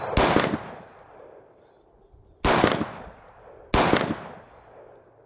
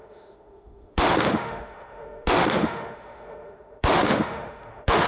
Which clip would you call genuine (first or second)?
first